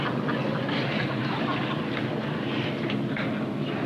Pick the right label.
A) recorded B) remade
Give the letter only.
A